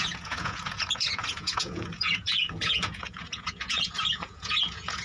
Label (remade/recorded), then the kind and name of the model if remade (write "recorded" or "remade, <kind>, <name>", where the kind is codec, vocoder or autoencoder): remade, vocoder, Vocos